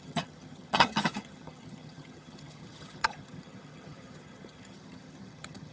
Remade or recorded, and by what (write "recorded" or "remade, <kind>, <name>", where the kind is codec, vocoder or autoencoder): remade, vocoder, HiFi-GAN